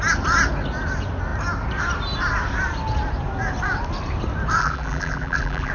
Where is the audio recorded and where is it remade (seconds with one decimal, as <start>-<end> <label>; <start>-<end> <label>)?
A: 0.0-4.6 recorded; 4.6-5.7 remade

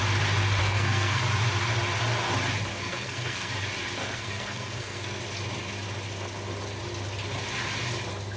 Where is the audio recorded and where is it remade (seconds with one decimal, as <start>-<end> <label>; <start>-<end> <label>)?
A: 0.0-0.6 recorded; 0.6-1.2 remade; 1.2-2.7 recorded; 2.7-3.5 remade; 3.5-4.0 recorded; 4.0-5.2 remade; 5.2-8.4 recorded

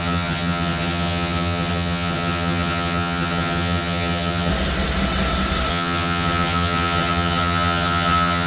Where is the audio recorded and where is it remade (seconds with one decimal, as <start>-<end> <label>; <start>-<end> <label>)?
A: 0.0-4.5 remade; 4.5-5.7 recorded; 5.7-8.5 remade

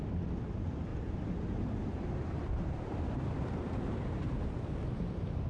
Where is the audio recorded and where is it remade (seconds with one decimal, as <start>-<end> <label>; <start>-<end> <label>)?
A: 0.0-0.9 recorded; 0.9-4.2 remade; 4.2-5.5 recorded

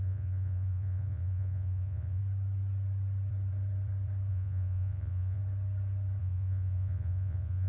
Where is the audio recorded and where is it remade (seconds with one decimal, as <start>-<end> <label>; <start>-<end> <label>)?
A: 0.0-2.2 remade; 2.2-4.3 recorded; 4.3-5.4 remade; 5.4-6.2 recorded; 6.2-7.7 remade

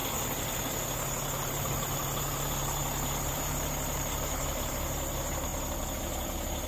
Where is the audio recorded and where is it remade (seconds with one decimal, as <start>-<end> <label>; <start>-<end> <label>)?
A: 0.0-1.5 recorded; 1.5-5.5 remade; 5.5-6.0 recorded; 6.0-6.7 remade